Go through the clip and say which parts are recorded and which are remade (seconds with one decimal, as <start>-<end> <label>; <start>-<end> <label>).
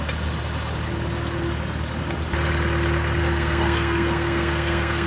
0.0-3.2 recorded; 3.2-5.1 remade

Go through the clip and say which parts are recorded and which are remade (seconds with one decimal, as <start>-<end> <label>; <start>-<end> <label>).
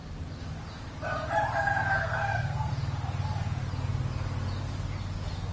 0.0-2.0 recorded; 2.0-2.7 remade; 2.7-5.5 recorded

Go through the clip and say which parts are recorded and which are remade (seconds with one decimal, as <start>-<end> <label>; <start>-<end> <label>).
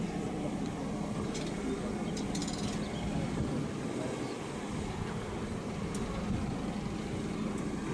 0.0-7.9 recorded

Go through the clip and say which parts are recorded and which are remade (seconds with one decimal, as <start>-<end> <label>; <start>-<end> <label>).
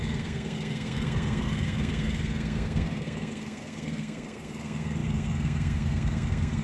0.0-6.6 remade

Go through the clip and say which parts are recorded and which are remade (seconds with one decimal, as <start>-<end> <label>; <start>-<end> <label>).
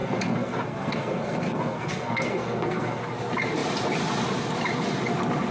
0.0-3.0 remade; 3.0-5.5 recorded